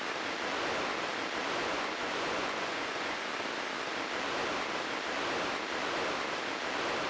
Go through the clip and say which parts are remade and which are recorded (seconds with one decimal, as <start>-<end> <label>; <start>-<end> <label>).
0.0-1.6 recorded; 1.6-3.3 remade; 3.3-7.1 recorded